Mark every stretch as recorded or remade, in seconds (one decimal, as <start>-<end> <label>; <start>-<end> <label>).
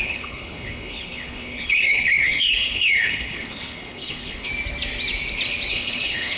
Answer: 0.0-4.5 remade; 4.5-5.7 recorded; 5.7-6.4 remade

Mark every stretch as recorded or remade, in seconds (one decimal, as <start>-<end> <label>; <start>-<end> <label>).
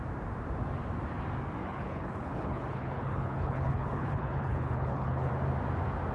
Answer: 0.0-1.6 recorded; 1.6-5.3 remade; 5.3-6.1 recorded